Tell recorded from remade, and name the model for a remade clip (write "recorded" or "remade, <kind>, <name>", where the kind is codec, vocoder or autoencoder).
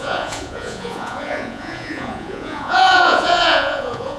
remade, vocoder, Vocos